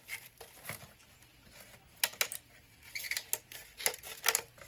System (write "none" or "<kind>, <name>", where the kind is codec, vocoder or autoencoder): none